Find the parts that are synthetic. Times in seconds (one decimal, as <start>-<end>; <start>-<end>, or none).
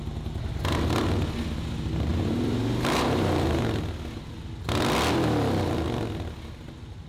2.1-3.6